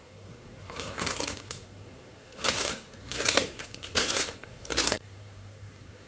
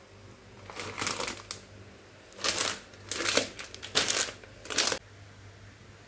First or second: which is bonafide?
second